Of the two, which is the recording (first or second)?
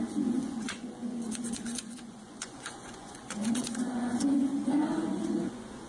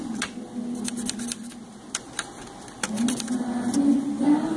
second